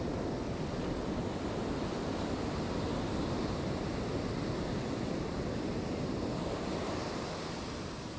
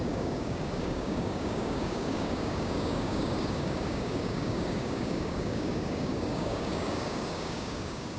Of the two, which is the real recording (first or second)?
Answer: first